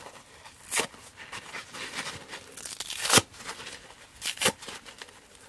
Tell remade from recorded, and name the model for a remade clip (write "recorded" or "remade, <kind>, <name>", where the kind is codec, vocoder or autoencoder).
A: recorded